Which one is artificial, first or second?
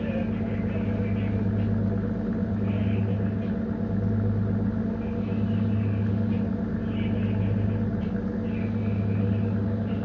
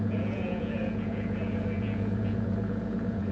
second